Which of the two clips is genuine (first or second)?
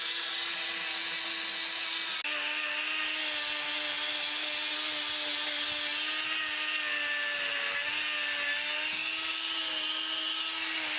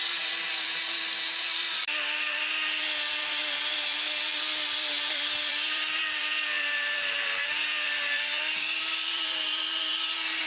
first